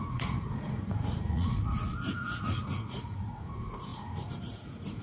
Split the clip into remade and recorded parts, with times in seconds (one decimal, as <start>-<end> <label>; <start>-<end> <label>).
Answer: 0.0-5.0 remade